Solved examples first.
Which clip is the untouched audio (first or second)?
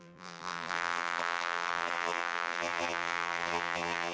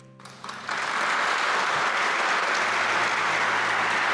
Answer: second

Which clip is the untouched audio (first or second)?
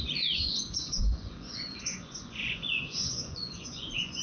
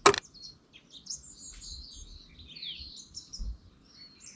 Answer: second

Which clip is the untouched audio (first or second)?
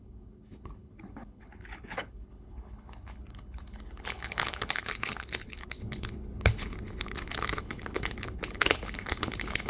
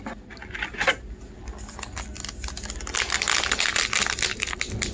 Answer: second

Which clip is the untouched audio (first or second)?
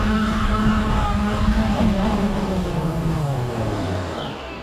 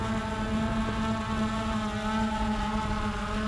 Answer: second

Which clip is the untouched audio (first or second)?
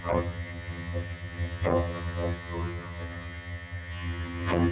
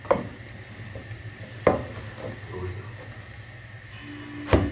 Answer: second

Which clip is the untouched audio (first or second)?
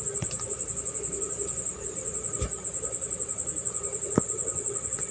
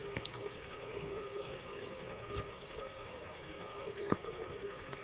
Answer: first